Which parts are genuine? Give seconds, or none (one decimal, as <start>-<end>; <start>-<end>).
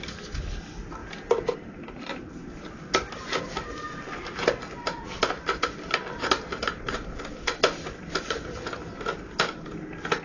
0.0-10.2